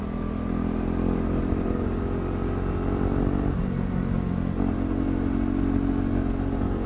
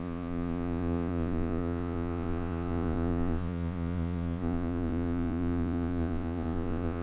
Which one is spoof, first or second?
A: second